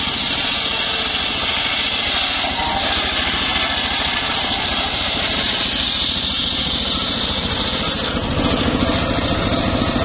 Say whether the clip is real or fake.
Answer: real